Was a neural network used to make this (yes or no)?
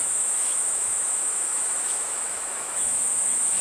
yes